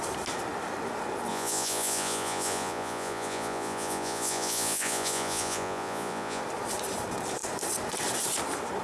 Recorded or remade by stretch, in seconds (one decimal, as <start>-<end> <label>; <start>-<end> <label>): 0.0-1.3 recorded; 1.3-6.4 remade; 6.4-8.8 recorded